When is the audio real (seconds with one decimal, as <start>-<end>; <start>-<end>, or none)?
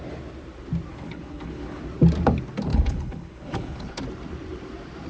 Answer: 0.0-0.9; 1.8-2.7; 4.0-5.1